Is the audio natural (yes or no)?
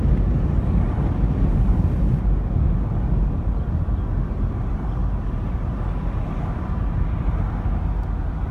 yes